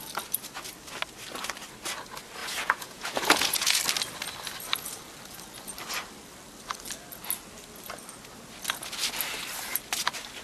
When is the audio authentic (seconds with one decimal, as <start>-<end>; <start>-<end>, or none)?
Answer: 0.0-2.4; 3.8-10.4